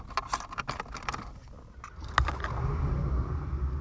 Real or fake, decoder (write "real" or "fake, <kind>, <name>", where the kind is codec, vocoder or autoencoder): real